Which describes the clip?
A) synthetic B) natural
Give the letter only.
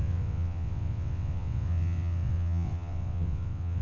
A